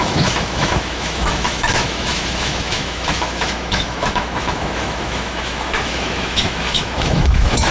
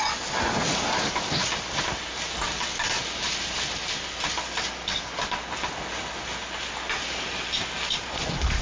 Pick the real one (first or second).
second